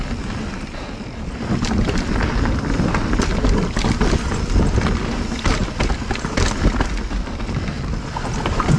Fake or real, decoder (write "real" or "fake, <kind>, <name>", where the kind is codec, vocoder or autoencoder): real